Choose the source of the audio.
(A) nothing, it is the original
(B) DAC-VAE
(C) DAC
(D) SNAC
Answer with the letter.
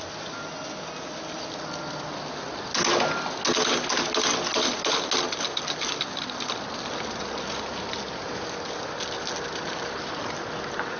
A